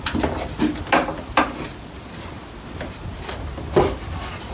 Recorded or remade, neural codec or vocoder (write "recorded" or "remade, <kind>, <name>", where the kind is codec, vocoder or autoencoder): recorded